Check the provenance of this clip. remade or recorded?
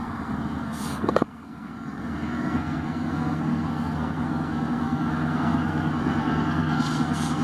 remade